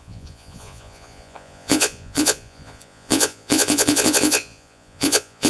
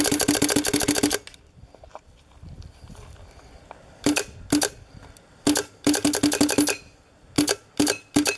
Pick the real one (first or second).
second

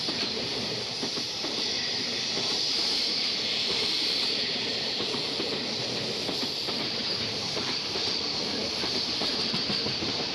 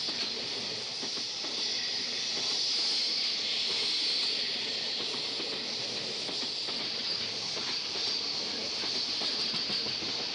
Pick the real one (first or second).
second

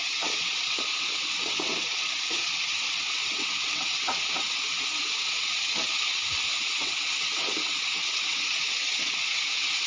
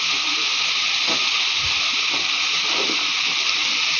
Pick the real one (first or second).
second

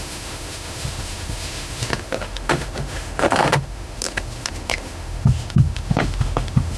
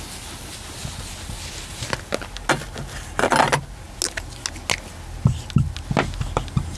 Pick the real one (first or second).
second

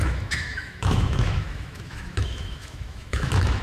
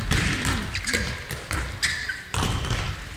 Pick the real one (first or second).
second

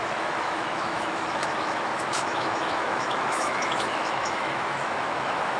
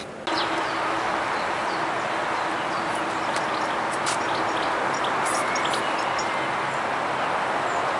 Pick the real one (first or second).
second